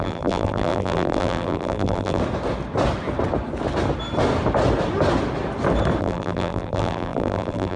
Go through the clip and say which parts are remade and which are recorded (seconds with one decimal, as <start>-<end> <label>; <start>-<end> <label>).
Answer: 0.0-2.2 remade; 2.2-6.0 recorded; 6.0-7.8 remade